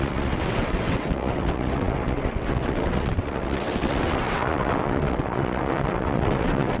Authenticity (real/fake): fake